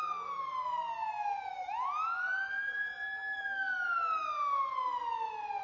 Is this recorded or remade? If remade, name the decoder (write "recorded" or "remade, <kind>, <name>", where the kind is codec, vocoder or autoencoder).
recorded